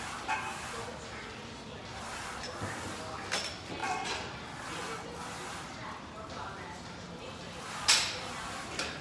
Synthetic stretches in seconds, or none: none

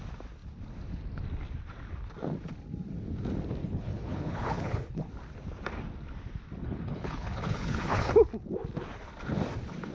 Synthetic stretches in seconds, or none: 3.6-5.1; 6.6-8.1